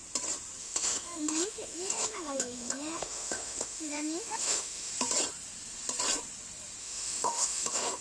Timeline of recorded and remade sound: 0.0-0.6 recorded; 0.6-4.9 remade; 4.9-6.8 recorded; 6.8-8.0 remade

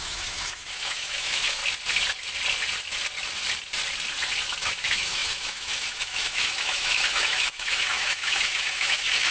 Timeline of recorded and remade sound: 0.0-1.6 remade; 1.6-4.6 recorded; 4.6-9.3 remade

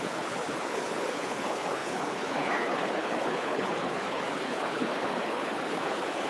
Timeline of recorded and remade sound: 0.0-6.3 remade

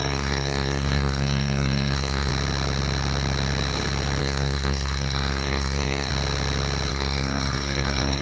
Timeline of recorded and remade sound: 0.0-2.3 remade; 2.3-4.2 recorded; 4.2-6.1 remade; 6.1-6.9 recorded; 6.9-8.2 remade

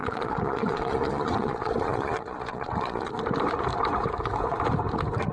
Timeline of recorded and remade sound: 0.0-3.2 remade; 3.2-5.3 recorded